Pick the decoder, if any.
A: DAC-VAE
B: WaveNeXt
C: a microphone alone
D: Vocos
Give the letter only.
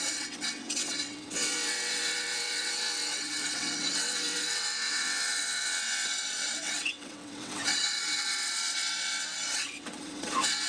B